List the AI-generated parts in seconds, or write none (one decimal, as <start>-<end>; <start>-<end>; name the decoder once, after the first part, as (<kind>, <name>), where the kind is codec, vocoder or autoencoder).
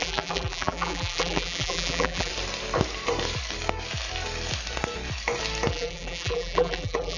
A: 0.0-2.3 (vocoder, BigVGAN v2); 5.7-7.2